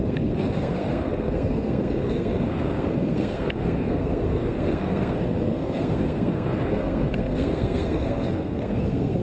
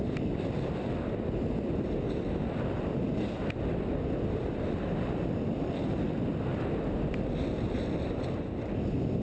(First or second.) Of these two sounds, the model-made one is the first